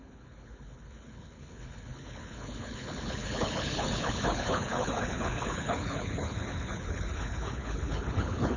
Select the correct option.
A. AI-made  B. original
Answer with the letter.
A